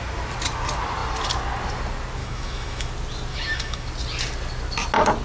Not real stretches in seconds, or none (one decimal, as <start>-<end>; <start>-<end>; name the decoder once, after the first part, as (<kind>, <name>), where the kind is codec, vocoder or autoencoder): 2.2-2.9 (autoencoder, DAC-VAE); 3.3-3.9